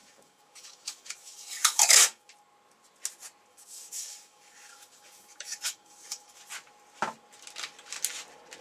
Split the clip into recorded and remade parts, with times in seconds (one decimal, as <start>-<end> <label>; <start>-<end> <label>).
0.0-2.3 remade; 2.3-3.5 recorded; 3.5-6.4 remade; 6.4-8.6 recorded